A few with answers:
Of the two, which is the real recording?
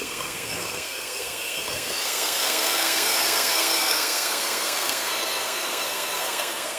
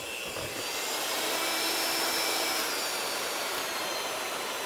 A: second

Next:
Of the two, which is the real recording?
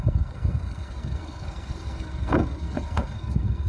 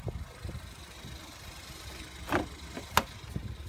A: second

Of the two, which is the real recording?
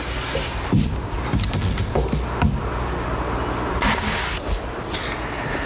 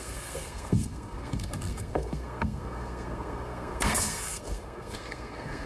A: first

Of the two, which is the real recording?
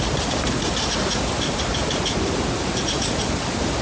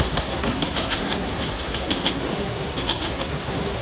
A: first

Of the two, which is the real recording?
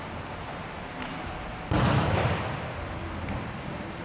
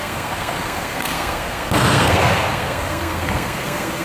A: first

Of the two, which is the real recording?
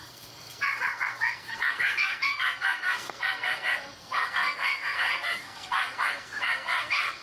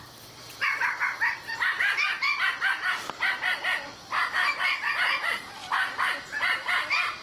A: second